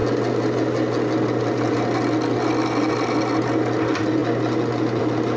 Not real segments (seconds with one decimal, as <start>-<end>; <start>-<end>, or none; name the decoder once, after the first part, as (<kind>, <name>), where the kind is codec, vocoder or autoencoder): none